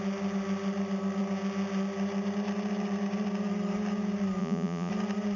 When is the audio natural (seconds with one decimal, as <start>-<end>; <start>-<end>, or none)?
0.0-4.4; 4.9-5.4